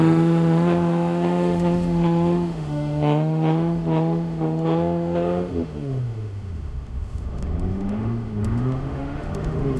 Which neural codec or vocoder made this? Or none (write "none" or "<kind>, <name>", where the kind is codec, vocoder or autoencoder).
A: autoencoder, DAC-VAE